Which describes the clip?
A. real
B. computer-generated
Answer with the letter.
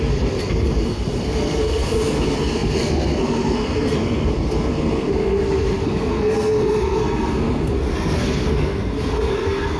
B